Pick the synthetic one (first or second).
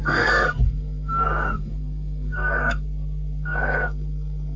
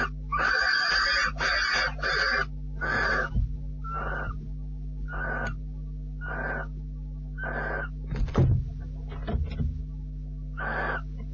first